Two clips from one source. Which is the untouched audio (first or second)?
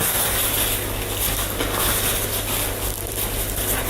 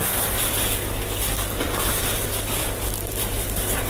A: first